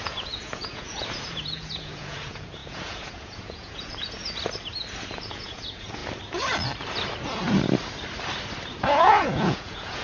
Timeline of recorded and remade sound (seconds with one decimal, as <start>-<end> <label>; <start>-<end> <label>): 0.0-4.2 remade; 4.2-5.1 recorded; 5.1-6.0 remade; 6.0-8.8 recorded; 8.8-10.0 remade